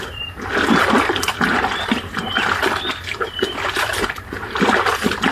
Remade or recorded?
recorded